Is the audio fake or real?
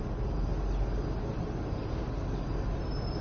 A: real